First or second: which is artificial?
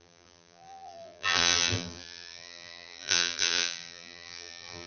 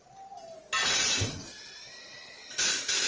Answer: first